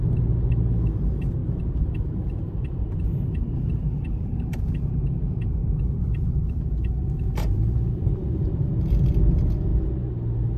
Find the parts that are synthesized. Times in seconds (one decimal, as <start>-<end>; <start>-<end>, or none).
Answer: 1.4-4.9; 5.6-9.1